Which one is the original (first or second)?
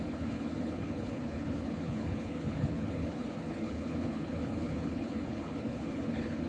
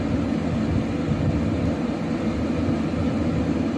second